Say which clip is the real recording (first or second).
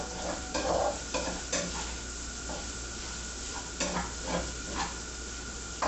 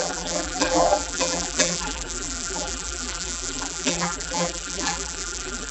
first